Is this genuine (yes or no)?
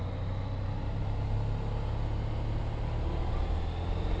yes